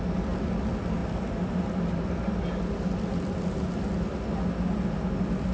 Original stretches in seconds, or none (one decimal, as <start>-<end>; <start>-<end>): 0.0-5.5